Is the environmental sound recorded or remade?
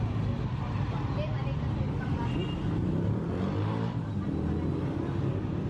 recorded